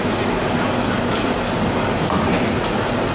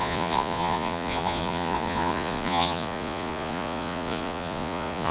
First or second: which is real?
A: first